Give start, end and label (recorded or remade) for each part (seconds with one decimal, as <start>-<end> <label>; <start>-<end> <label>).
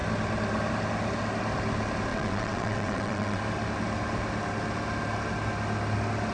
0.0-2.1 recorded; 2.1-3.4 remade; 3.4-6.3 recorded